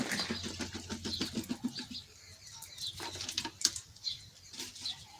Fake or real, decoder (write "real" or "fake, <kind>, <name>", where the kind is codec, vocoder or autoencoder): real